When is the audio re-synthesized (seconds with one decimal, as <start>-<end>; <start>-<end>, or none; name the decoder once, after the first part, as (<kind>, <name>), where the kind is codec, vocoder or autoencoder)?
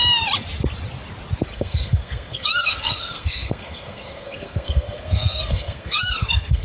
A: 1.5-6.6 (codec, SNAC)